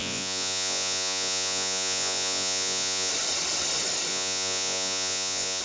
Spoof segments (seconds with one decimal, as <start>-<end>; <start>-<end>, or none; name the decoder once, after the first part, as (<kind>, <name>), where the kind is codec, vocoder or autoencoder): 0.0-3.1 (vocoder, Vocos); 4.1-5.6